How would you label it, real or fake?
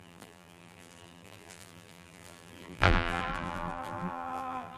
fake